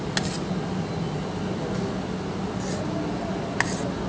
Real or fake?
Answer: real